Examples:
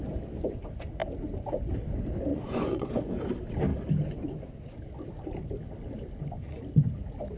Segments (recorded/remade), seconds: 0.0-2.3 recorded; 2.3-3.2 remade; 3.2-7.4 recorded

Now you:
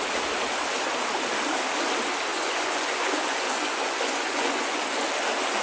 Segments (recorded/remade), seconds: 0.0-2.3 recorded; 2.3-5.0 remade; 5.0-5.6 recorded

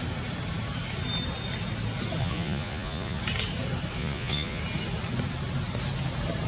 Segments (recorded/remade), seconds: 0.0-2.2 recorded; 2.2-3.2 remade; 3.2-4.0 recorded; 4.0-4.6 remade; 4.6-6.5 recorded

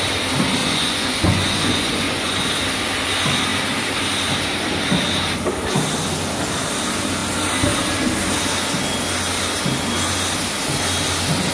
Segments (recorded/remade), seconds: 0.0-0.6 recorded; 0.6-2.5 remade; 2.5-11.5 recorded